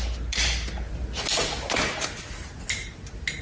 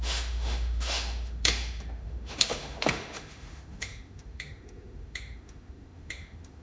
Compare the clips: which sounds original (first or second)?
first